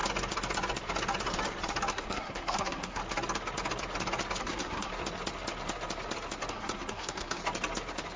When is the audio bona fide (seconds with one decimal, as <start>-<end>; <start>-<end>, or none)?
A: 0.0-1.9; 3.0-4.4; 4.9-6.5; 7.4-8.2